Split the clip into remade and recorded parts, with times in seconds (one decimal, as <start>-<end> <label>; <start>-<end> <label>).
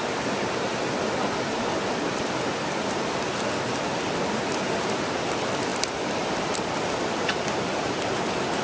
0.0-5.7 recorded; 5.7-8.6 remade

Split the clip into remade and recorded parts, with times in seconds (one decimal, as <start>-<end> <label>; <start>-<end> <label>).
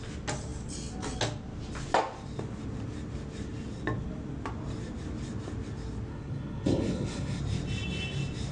0.0-6.1 recorded; 6.1-7.4 remade; 7.4-8.5 recorded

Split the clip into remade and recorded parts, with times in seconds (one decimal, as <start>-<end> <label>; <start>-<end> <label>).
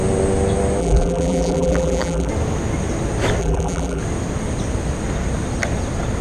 0.0-0.8 recorded; 0.8-2.3 remade; 2.3-3.4 recorded; 3.4-4.0 remade; 4.0-6.2 recorded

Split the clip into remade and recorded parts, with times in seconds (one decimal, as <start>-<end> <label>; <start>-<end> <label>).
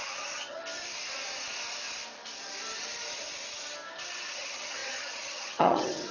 0.0-0.6 remade; 0.6-4.3 recorded; 4.3-6.1 remade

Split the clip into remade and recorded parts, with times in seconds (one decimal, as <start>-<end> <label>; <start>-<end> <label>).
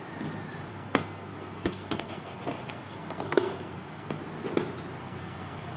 0.0-0.7 recorded; 0.7-4.2 remade; 4.2-5.0 recorded; 5.0-5.8 remade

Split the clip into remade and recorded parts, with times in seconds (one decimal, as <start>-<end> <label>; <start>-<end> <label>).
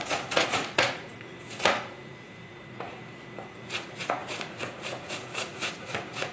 0.0-6.3 remade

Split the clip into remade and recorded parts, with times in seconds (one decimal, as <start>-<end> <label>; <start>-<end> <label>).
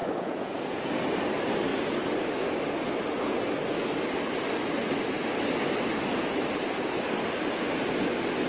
0.0-0.9 remade; 0.9-8.5 recorded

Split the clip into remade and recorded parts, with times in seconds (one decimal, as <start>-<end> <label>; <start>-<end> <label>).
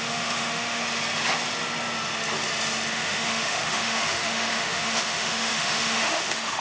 0.0-0.8 remade; 0.8-2.9 recorded; 2.9-6.6 remade